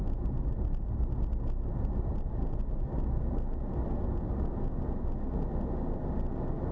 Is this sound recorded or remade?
recorded